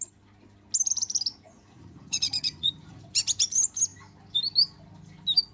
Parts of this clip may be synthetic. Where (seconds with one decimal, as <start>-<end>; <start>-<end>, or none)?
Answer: 1.3-2.9